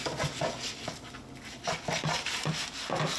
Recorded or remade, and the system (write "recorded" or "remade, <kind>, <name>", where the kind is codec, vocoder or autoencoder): recorded